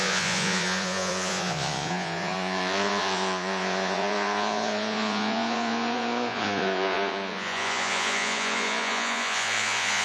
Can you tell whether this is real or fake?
fake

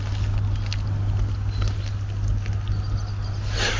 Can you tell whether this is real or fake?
real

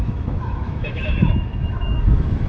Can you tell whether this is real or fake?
fake